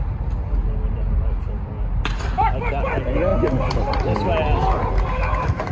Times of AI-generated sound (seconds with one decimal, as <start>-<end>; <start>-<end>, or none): none